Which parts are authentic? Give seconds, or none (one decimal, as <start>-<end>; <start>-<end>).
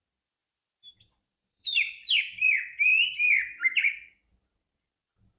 0.0-0.4; 2.6-5.4